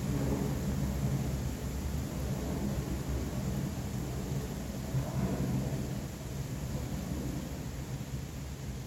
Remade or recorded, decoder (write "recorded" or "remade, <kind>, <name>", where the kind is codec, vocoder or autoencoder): recorded